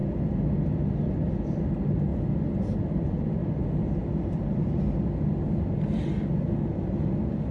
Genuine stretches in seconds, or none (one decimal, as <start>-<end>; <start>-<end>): 0.0-7.5